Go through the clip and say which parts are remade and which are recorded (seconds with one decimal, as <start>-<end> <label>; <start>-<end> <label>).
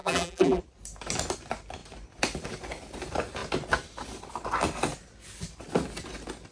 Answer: 0.0-0.6 remade; 0.6-6.5 recorded